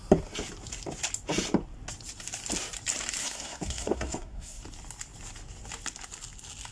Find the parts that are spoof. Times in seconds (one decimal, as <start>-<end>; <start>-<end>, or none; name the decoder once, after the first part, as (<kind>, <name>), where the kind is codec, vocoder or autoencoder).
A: 3.2-4.6 (codec, SNAC)